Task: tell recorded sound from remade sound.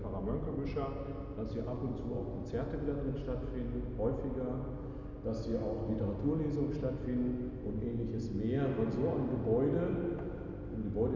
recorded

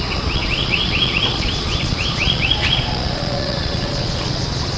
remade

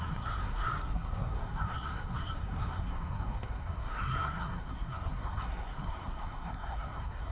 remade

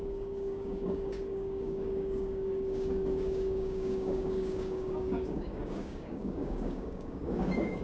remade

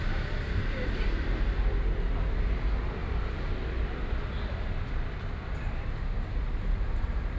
recorded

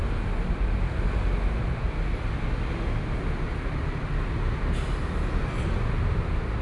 recorded